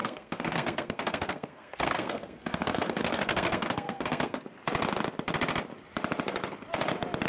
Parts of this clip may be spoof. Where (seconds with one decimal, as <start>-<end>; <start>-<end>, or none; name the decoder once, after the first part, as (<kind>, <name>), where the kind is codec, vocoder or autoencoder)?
0.0-4.4 (codec, SNAC)